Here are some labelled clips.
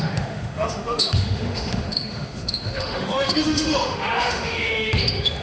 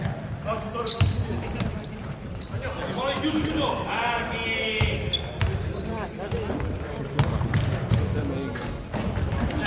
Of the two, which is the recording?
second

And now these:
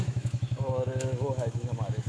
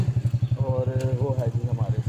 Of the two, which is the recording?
second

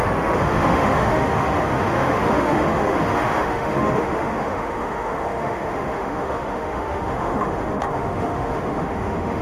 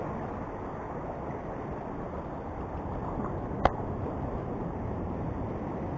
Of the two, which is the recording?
second